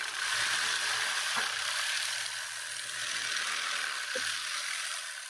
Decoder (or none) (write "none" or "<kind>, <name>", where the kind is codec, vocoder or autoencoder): vocoder, BigVGAN v2